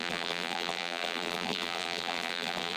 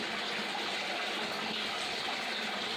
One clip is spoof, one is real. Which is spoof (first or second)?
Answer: first